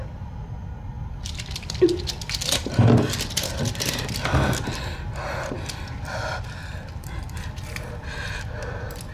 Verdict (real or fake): real